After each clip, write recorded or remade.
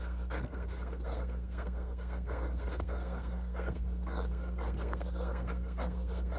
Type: remade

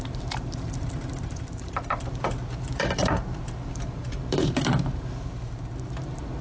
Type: remade